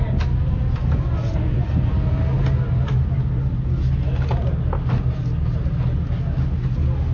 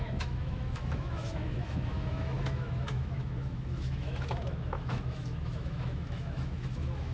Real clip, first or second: first